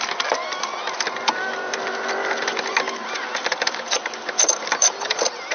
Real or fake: real